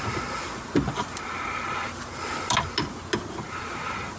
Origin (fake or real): real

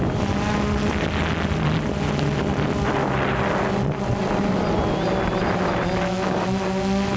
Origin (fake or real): real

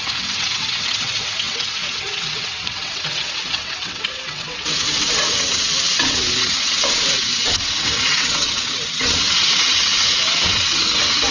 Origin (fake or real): fake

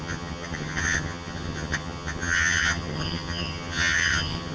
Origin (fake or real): fake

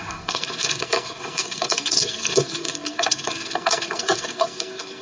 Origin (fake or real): fake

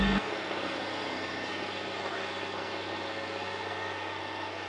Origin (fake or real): fake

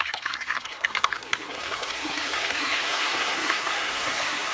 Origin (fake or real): fake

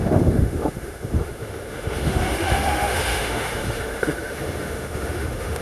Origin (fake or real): fake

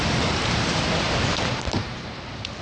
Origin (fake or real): fake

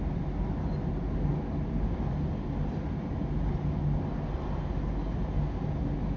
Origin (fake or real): real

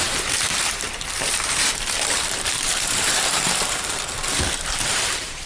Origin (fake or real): fake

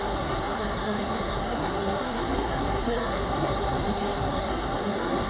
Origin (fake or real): fake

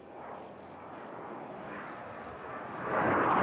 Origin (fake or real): real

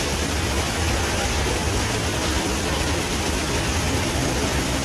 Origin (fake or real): real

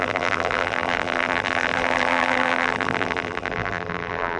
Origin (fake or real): fake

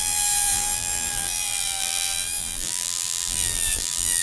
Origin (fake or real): fake